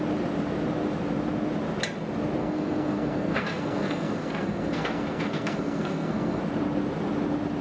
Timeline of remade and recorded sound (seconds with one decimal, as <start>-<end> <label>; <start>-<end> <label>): 0.0-2.4 recorded; 2.4-6.4 remade; 6.4-7.6 recorded